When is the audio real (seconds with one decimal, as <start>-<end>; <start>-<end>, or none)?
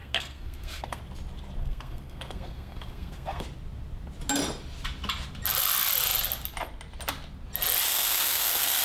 1.0-1.6; 3.4-7.9